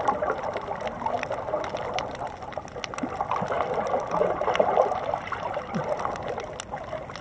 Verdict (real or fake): real